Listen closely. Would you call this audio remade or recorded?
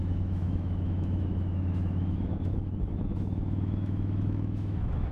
remade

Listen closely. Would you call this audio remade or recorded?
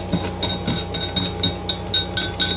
recorded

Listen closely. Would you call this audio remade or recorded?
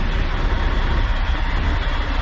recorded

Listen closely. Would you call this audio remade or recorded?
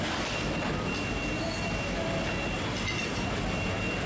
recorded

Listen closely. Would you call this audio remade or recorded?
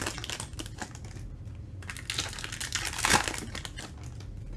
recorded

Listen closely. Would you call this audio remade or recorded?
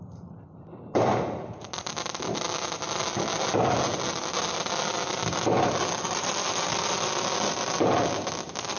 recorded